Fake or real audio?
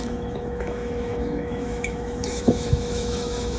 fake